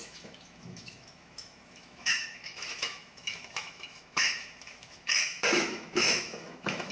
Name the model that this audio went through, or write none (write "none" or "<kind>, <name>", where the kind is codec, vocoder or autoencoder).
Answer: autoencoder, DAC-VAE